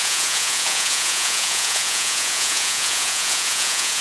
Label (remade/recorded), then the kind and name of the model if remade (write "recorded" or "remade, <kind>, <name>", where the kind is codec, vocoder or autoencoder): remade, vocoder, Vocos